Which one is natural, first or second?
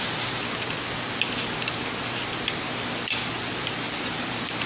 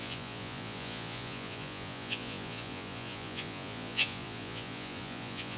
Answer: first